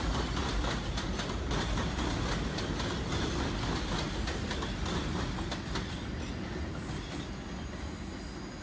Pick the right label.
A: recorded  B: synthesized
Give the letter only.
A